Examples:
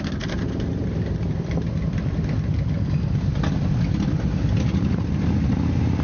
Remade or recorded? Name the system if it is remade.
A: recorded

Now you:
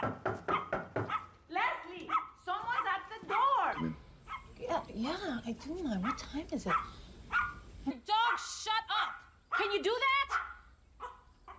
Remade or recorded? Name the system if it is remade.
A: recorded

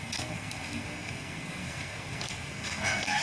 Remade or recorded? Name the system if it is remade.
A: remade, codec, SNAC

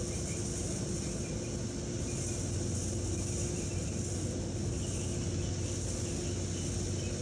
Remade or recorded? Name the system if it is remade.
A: recorded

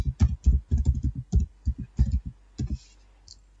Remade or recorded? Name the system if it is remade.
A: recorded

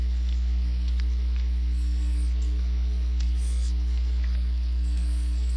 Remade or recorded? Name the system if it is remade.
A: remade, codec, SNAC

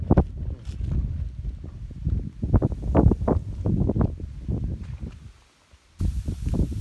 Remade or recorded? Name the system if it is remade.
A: recorded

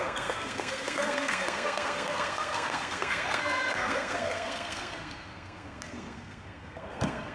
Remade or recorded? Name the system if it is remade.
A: remade, codec, SNAC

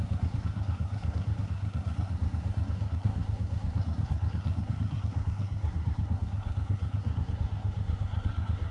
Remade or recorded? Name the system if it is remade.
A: remade, codec, SNAC